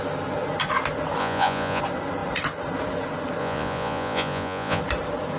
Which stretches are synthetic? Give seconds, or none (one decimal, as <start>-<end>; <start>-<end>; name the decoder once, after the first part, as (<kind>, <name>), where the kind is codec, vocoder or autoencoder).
1.2-1.8 (vocoder, Vocos); 3.4-4.8